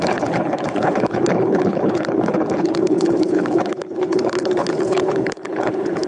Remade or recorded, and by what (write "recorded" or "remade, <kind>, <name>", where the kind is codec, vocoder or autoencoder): remade, codec, HILCodec